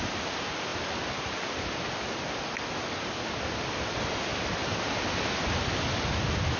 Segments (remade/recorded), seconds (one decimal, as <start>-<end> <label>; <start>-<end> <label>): 0.0-6.6 recorded